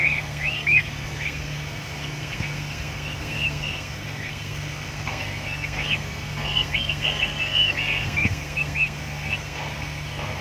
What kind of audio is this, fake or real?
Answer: fake